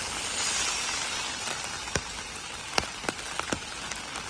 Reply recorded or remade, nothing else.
recorded